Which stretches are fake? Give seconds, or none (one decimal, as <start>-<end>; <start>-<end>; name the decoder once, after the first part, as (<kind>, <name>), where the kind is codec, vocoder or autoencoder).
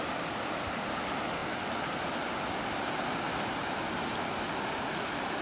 none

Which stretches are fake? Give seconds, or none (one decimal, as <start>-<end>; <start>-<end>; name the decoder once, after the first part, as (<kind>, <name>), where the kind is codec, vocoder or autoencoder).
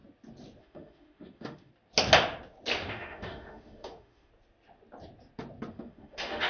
0.6-1.7 (autoencoder, DAC-VAE); 2.9-4.3; 5.7-6.5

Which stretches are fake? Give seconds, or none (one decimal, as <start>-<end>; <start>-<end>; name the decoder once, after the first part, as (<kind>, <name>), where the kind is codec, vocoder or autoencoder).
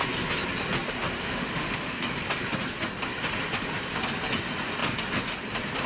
1.0-2.0 (autoencoder, DAC-VAE)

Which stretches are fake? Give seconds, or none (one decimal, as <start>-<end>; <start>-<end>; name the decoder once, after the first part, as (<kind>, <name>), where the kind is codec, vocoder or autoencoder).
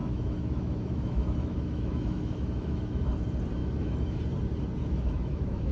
0.0-3.0 (autoencoder, DAC-VAE); 3.6-4.2; 4.8-5.7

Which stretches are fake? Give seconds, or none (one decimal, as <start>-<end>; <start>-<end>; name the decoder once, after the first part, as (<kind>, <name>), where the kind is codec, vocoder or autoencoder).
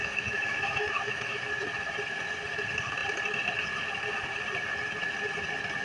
0.0-1.4 (autoencoder, DAC-VAE)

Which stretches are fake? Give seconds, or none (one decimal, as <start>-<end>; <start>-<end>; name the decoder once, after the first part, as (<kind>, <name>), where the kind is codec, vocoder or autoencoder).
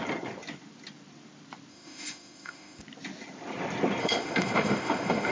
1.7-2.8 (autoencoder, DAC-VAE); 4.0-5.3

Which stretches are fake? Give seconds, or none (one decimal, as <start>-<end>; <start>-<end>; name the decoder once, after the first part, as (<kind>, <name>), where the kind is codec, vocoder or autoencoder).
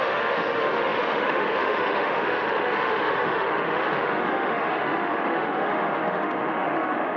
0.0-7.2 (autoencoder, DAC-VAE)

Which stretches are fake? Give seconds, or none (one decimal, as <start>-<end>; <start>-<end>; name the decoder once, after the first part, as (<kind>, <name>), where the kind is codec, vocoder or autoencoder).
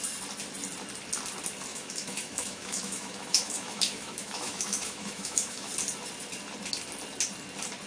1.7-5.7 (autoencoder, DAC-VAE)